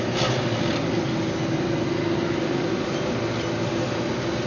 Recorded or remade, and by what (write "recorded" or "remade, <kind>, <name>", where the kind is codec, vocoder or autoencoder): recorded